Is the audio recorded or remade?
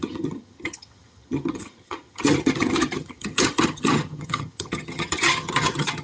remade